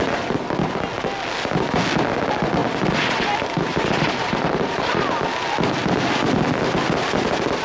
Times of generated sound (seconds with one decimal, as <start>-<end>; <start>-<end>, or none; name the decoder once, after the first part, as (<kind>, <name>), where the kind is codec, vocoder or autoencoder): none